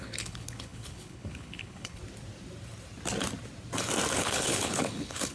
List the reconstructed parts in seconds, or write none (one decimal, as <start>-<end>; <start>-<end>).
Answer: 0.0-2.0; 4.1-5.3